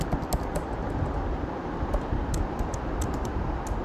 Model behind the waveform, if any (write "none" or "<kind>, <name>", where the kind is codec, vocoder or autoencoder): none